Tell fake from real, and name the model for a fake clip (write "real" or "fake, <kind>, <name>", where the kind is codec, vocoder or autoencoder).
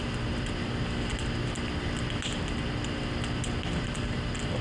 real